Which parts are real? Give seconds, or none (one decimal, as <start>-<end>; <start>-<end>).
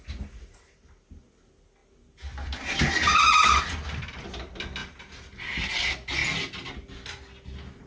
0.0-7.9